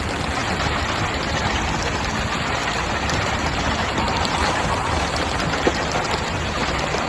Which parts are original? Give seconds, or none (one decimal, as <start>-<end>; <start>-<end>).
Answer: 0.0-2.6

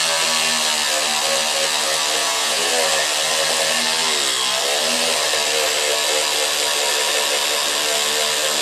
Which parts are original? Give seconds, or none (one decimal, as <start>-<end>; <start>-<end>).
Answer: 0.0-2.2; 2.7-8.6

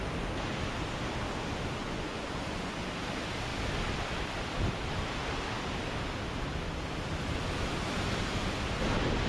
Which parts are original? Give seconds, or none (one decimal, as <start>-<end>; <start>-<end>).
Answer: 0.0-1.8; 2.8-9.3

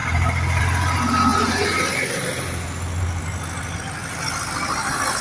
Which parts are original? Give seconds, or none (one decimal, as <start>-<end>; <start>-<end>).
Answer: 0.0-5.2

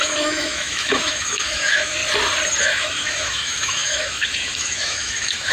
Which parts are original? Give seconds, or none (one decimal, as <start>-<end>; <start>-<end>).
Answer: 2.0-2.6

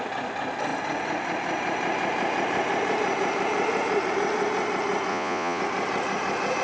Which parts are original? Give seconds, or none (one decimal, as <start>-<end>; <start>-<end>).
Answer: 0.0-5.1; 5.6-6.6

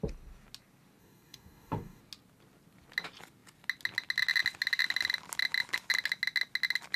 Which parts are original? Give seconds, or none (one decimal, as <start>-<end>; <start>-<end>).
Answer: 0.0-1.0; 2.0-7.0

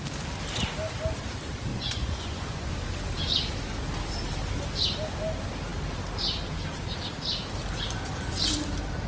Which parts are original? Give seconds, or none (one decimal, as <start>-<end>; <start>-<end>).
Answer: 0.0-1.7; 2.7-9.1